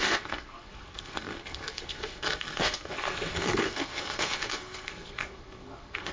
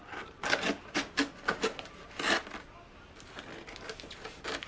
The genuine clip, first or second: second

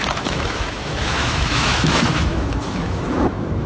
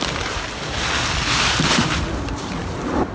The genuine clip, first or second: second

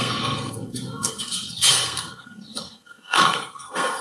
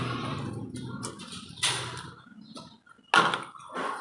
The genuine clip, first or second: second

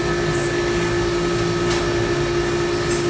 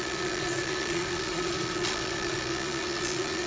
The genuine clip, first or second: first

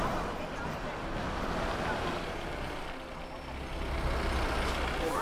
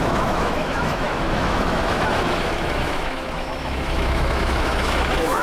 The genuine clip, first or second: first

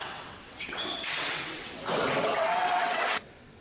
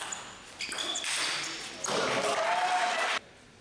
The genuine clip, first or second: second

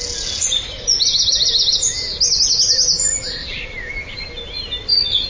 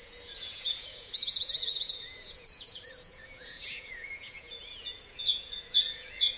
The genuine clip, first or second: first